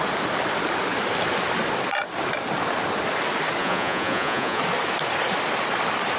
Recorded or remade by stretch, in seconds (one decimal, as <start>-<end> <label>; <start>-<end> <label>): 0.0-3.6 recorded; 3.6-4.6 remade; 4.6-6.2 recorded